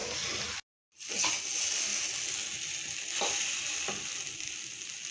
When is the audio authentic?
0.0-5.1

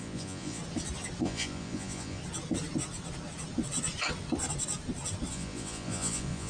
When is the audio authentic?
0.6-1.2; 2.2-5.3

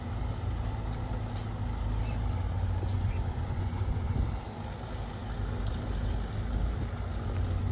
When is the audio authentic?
0.0-2.9; 4.2-7.7

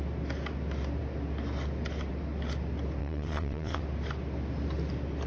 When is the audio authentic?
0.0-3.0; 3.8-5.3